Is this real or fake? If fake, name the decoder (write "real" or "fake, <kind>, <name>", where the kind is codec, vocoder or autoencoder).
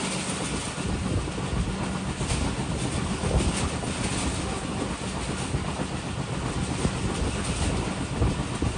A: real